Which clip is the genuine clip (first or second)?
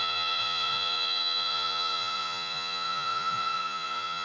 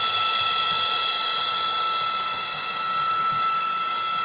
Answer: second